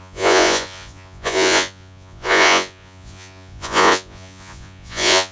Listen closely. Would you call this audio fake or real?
fake